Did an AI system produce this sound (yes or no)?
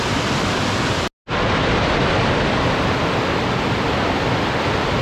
no